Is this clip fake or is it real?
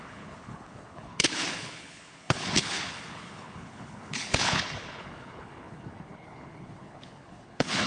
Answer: fake